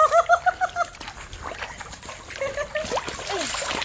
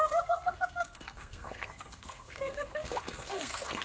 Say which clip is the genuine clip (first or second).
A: first